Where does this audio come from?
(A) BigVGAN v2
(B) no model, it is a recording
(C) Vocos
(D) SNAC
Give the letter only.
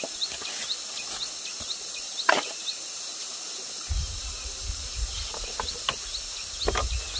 B